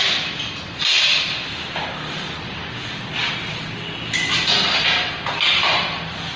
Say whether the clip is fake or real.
real